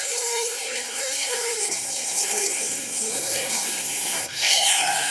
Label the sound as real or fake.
fake